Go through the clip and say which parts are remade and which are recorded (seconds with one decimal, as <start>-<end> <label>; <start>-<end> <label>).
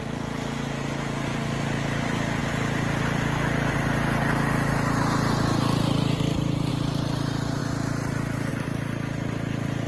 0.0-9.9 recorded